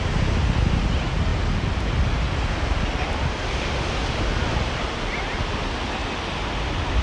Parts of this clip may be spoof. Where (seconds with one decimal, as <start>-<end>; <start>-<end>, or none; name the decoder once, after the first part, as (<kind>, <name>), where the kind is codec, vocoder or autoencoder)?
none